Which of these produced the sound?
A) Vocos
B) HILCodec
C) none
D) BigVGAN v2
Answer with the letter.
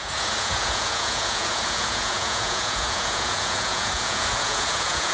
A